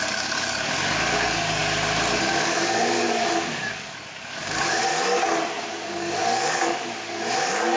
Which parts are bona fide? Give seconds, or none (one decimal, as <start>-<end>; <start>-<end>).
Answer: 1.6-2.2; 4.9-5.7